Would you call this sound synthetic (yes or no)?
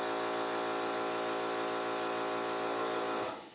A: no